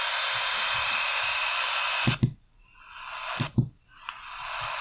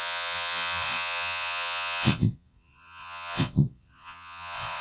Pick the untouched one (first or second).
first